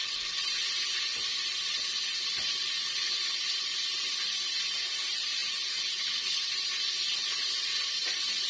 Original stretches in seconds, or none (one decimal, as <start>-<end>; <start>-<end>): 0.0-8.5